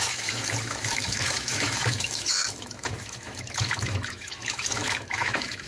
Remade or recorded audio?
remade